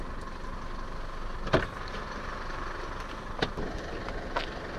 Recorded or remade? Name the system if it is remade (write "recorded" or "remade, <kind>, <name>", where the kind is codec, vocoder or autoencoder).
recorded